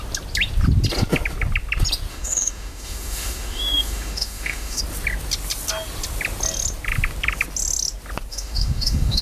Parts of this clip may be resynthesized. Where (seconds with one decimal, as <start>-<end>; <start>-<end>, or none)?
2.1-4.8; 8.3-9.2